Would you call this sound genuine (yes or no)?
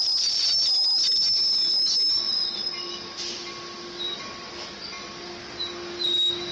yes